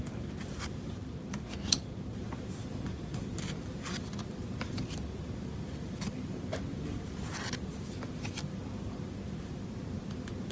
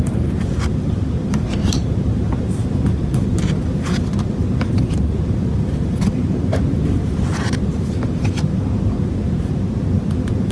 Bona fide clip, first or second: first